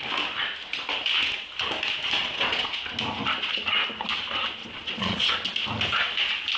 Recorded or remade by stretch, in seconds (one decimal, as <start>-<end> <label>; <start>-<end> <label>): 0.0-2.2 recorded; 2.2-2.7 remade; 2.7-4.6 recorded; 4.6-5.3 remade; 5.3-6.6 recorded